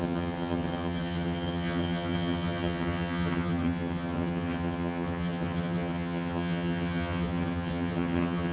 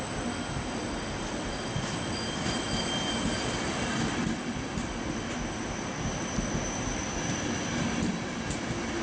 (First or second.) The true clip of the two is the second